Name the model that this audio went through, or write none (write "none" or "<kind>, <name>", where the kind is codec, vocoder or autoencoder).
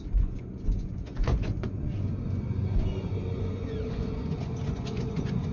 vocoder, Vocos